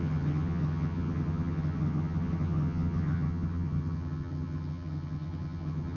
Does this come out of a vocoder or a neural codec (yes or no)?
yes